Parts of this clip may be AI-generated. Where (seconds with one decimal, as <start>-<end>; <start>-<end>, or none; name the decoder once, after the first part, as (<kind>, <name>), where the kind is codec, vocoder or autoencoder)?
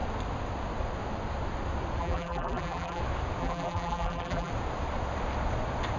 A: 2.0-3.0 (vocoder, BigVGAN v2); 3.4-4.5